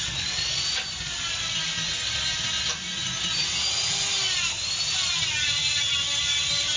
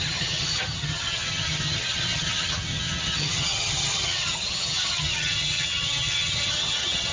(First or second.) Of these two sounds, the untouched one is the first